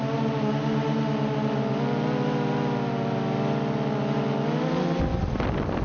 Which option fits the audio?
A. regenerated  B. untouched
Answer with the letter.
B